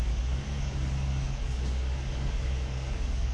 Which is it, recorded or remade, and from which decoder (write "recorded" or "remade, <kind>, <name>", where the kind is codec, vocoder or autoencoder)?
remade, codec, DAC